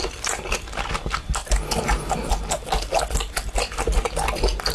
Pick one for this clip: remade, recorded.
recorded